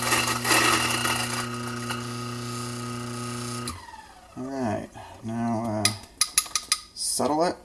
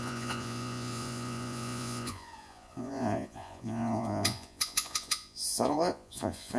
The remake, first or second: second